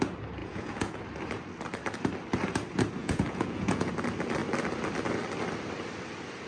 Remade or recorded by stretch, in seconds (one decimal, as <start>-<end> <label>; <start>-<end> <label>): 0.0-0.4 recorded; 0.4-1.0 remade; 1.0-3.0 recorded; 3.0-3.9 remade; 3.9-6.5 recorded